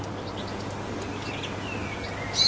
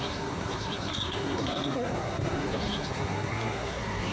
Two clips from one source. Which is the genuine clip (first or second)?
first